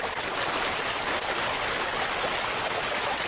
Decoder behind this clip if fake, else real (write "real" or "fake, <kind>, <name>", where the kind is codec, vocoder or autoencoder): real